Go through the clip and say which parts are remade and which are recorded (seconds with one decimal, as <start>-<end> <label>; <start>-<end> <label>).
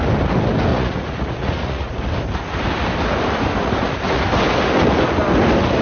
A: 0.0-0.7 recorded; 0.7-1.9 remade; 1.9-3.6 recorded; 3.6-4.2 remade; 4.2-5.8 recorded